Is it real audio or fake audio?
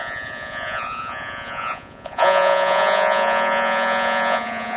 fake